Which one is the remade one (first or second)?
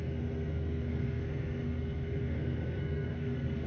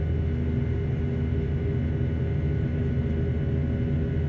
first